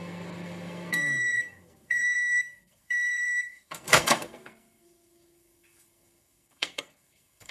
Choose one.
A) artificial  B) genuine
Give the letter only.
A